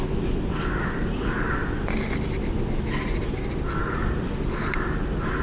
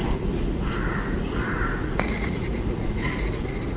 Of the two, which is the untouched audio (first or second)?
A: first